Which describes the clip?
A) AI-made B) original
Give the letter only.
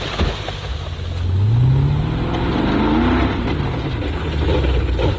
B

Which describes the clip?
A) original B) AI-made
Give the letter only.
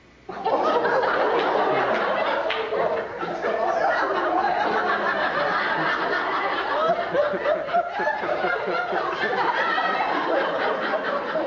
A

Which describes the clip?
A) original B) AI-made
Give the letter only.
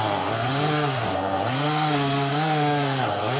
B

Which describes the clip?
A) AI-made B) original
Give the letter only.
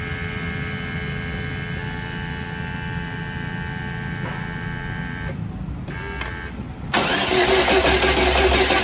B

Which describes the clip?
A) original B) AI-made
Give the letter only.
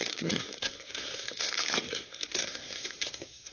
B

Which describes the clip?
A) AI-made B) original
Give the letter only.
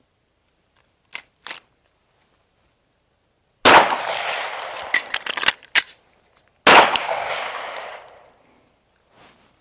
B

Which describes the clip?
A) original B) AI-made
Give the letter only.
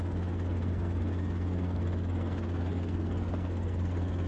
B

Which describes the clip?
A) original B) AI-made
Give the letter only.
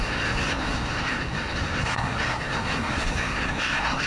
B